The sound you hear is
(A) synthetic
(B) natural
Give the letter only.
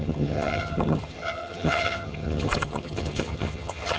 A